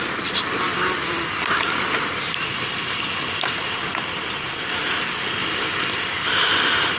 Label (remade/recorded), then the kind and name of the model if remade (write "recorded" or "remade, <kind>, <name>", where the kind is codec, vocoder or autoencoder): recorded